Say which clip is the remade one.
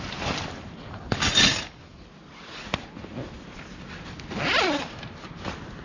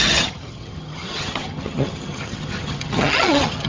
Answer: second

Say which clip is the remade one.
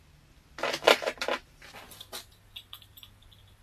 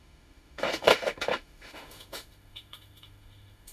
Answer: second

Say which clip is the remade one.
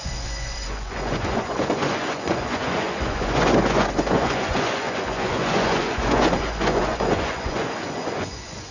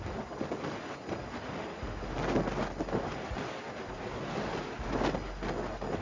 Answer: first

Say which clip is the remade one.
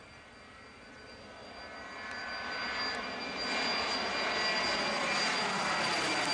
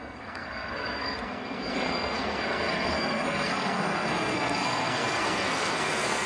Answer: second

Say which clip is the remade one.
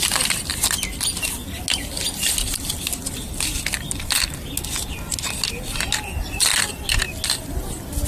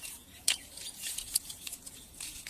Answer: second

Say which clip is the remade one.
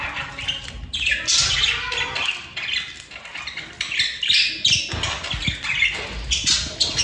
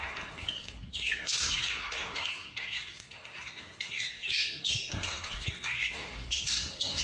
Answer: second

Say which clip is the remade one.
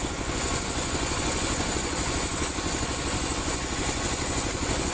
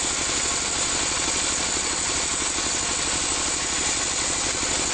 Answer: first